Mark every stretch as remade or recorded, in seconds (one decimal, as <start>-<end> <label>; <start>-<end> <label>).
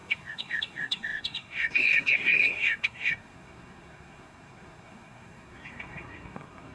0.0-6.7 remade